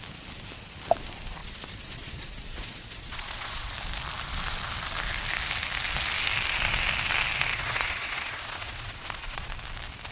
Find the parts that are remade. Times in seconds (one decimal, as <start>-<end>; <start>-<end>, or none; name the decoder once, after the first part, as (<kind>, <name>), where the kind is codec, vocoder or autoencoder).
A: 1.4-3.7 (vocoder, Vocos); 7.5-9.5